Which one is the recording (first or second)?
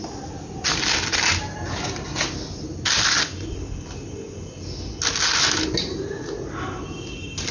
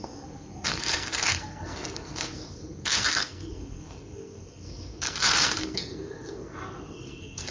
first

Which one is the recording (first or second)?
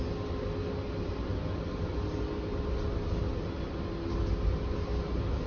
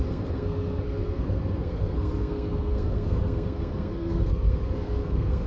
first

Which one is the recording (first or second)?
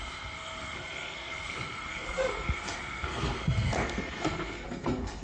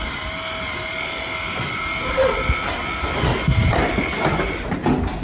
second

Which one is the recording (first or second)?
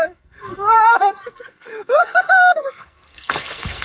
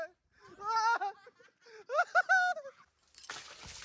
second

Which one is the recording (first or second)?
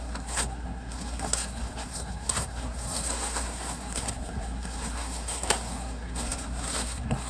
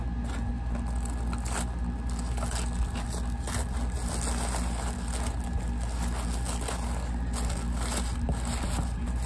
second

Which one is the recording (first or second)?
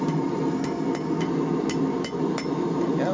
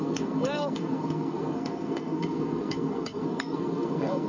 first